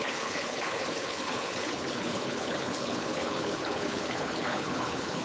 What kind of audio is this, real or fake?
fake